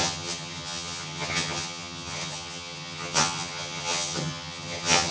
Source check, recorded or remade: remade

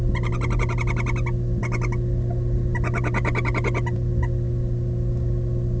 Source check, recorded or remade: recorded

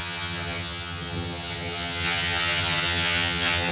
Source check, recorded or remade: remade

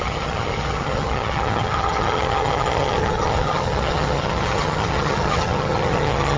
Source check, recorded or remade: remade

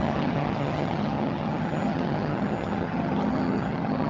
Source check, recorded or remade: remade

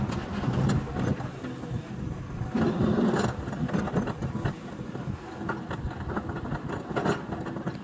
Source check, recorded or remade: recorded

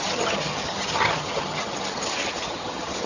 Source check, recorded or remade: remade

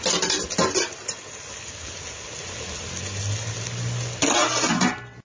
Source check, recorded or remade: recorded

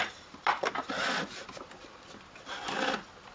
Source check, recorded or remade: recorded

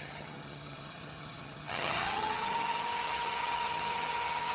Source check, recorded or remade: remade